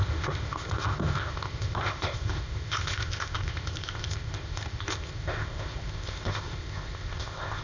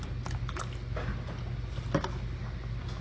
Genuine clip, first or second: second